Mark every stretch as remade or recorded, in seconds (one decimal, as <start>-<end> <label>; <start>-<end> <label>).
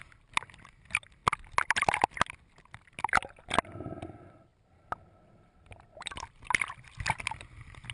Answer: 0.0-7.9 recorded